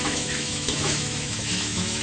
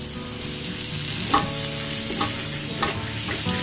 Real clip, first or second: second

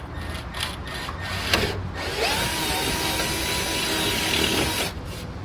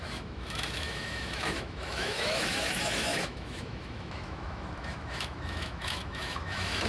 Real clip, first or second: first